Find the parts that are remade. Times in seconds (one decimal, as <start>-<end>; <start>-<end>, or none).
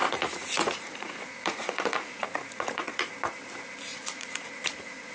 0.0-3.1; 3.9-5.1